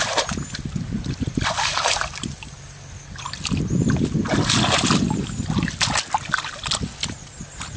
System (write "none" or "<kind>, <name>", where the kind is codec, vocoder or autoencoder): none